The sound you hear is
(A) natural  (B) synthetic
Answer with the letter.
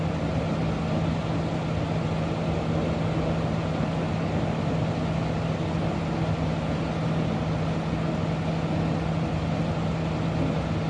A